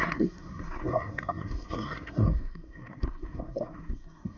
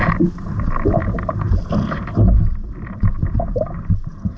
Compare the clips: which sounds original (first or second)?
second